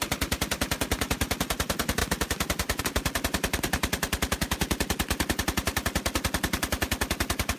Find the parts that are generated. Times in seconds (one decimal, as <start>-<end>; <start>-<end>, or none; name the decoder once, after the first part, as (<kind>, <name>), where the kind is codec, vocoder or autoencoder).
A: 2.0-2.8 (vocoder, BigVGAN v2)